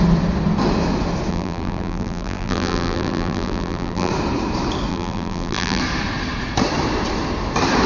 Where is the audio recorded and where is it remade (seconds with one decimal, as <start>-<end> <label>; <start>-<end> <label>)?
0.0-1.3 recorded; 1.3-4.1 remade; 4.1-4.9 recorded; 4.9-5.8 remade; 5.8-7.9 recorded